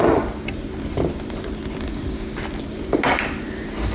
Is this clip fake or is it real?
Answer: real